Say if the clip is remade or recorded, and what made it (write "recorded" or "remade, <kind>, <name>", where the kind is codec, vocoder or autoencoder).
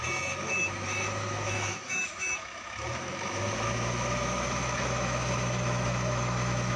remade, autoencoder, DAC-VAE